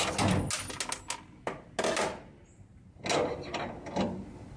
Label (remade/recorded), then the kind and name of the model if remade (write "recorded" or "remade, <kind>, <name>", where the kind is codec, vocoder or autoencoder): recorded